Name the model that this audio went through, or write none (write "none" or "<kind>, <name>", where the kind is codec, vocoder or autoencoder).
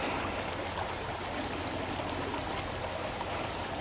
none